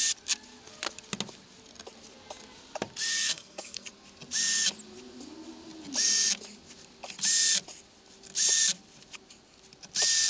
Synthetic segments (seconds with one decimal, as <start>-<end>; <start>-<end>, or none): 3.1-3.9